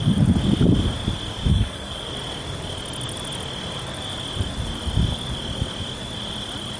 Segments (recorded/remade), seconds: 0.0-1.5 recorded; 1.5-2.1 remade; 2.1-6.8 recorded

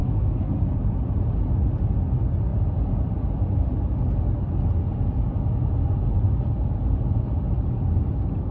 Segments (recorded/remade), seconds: 0.0-0.6 remade; 0.6-8.5 recorded

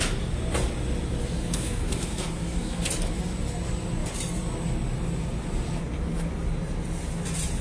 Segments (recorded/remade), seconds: 0.0-1.2 recorded; 1.2-2.9 remade; 2.9-7.6 recorded

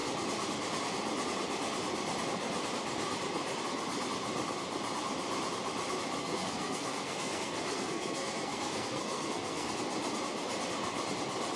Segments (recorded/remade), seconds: 0.0-6.2 recorded; 6.2-9.7 remade; 9.7-11.6 recorded

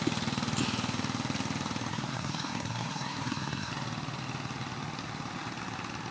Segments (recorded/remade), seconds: 0.0-1.9 recorded; 1.9-3.7 remade; 3.7-6.1 recorded

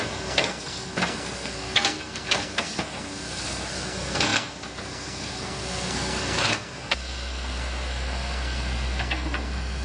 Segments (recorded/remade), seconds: 0.0-9.8 remade